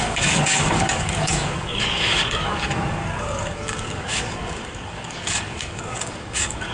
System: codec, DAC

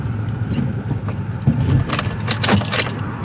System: none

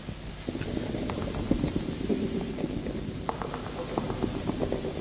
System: none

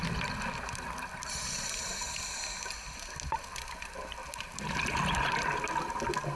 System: none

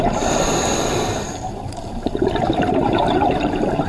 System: vocoder, BigVGAN v2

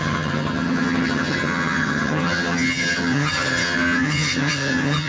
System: vocoder, HiFi-GAN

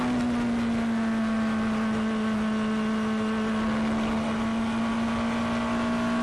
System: none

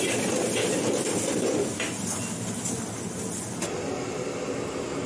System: none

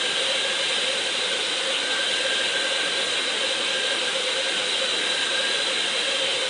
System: none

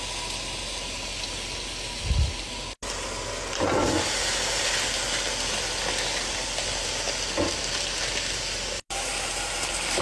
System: none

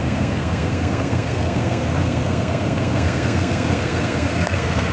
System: codec, SNAC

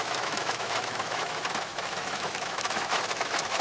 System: autoencoder, DAC-VAE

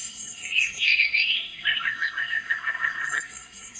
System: codec, SNAC